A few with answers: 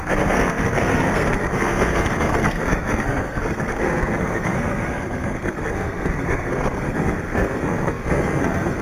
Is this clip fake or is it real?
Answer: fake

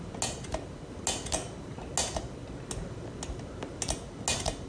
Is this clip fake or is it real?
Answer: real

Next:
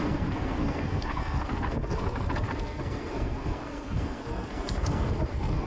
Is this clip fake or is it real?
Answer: fake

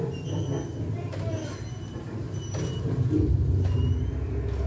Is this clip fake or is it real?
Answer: real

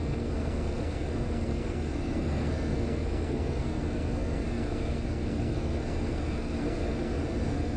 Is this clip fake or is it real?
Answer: fake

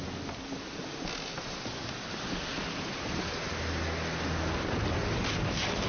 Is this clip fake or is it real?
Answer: real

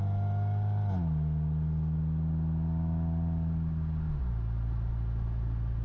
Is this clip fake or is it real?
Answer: real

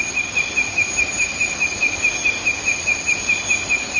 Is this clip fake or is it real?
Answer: real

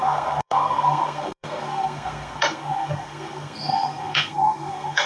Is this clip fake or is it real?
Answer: fake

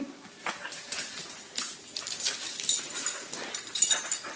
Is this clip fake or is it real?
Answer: real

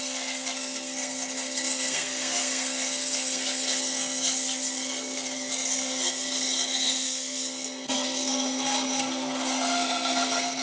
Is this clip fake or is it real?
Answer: fake